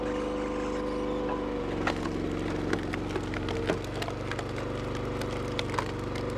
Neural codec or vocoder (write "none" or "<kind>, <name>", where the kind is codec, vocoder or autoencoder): none